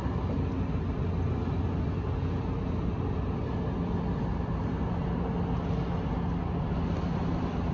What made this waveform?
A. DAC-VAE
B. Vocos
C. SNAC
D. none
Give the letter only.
D